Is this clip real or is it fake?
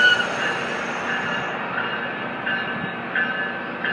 real